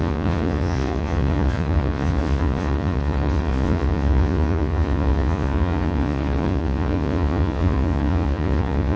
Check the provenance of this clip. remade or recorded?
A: remade